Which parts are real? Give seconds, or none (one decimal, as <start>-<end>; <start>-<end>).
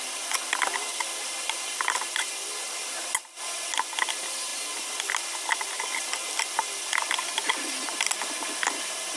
0.0-9.2